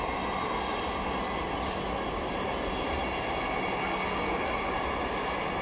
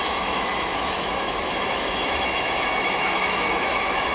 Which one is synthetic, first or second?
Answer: second